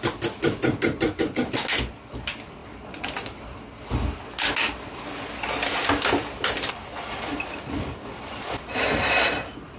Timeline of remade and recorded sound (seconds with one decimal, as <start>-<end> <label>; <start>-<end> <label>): 0.0-9.8 recorded